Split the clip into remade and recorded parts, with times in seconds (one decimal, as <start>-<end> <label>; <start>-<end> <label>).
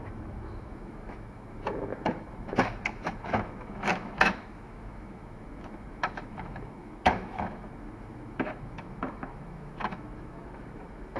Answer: 0.0-11.2 remade